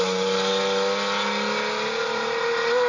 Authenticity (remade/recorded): recorded